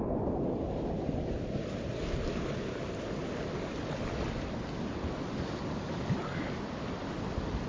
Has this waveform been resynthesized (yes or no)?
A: no